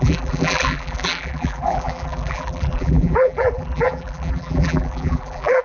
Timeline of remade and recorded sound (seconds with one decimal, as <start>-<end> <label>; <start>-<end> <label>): 0.0-5.6 remade